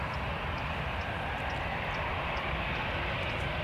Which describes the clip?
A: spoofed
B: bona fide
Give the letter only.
B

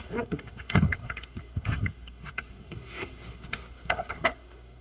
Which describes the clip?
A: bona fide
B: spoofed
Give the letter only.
B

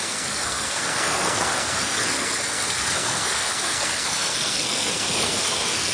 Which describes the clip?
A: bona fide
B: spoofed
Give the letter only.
B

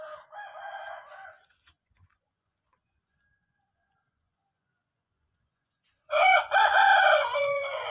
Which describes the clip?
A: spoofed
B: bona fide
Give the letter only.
A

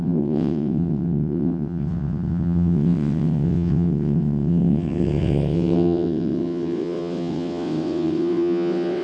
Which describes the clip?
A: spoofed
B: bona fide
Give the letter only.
A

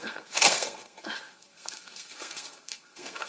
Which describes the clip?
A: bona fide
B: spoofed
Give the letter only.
B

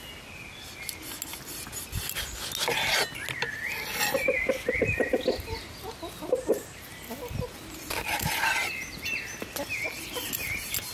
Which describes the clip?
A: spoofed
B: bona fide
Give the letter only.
B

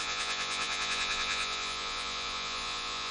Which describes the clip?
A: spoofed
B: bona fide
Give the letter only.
A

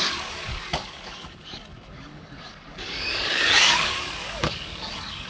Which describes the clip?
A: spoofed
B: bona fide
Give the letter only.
A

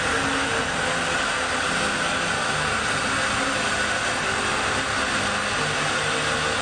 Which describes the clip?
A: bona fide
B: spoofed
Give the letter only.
A